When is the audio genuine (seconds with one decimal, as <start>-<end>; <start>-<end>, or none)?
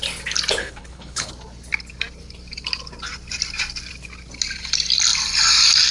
0.0-0.6; 1.3-5.9